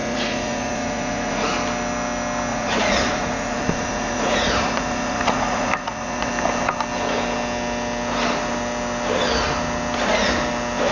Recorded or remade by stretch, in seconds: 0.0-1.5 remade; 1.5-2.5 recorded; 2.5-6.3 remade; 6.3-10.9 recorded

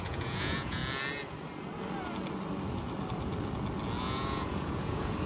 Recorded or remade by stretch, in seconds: 0.0-0.8 remade; 0.8-4.0 recorded; 4.0-5.3 remade

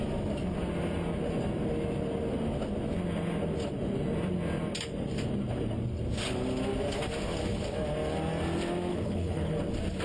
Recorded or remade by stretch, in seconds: 0.0-8.9 recorded; 8.9-9.5 remade; 9.5-10.0 recorded